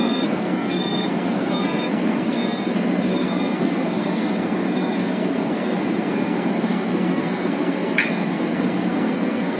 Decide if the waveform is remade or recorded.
remade